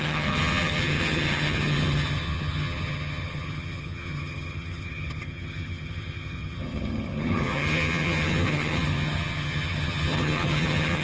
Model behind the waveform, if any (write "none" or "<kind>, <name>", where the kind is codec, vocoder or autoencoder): vocoder, HiFi-GAN